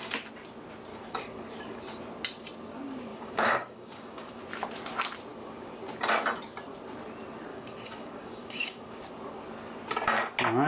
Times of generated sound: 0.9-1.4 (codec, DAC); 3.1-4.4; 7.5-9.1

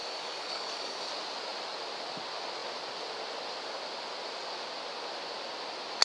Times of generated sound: 0.0-1.1 (codec, DAC)

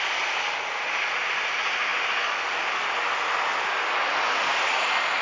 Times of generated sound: none